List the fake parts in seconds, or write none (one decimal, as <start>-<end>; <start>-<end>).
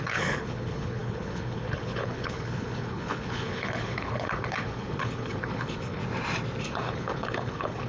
0.0-6.0; 6.6-7.9